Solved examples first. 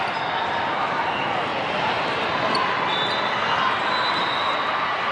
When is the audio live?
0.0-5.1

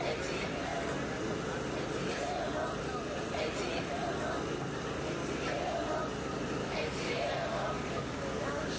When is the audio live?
0.0-6.6; 7.1-7.5

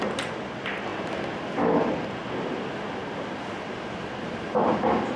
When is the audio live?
0.0-5.2

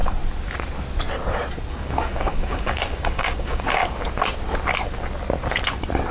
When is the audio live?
0.0-1.7; 3.8-6.1

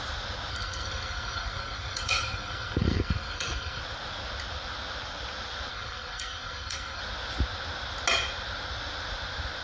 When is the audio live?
0.0-0.5; 3.8-5.7; 7.0-9.6